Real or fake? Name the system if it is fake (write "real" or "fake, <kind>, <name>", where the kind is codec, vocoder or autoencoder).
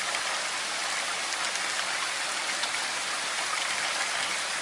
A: real